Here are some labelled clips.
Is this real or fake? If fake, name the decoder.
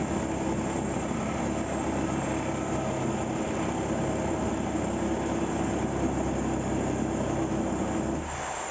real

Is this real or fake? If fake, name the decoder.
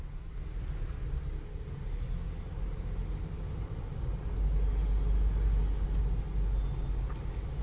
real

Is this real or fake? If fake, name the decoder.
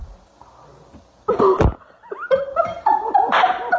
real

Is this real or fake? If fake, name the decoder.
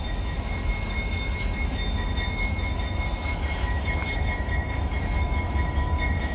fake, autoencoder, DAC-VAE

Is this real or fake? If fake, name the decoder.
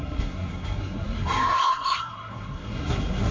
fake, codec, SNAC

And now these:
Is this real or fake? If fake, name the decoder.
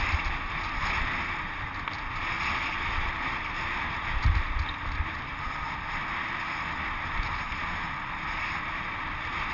real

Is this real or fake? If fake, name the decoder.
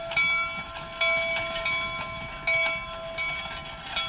real